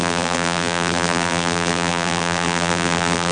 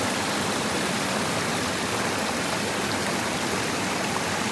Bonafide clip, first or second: second